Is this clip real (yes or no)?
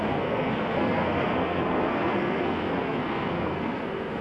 no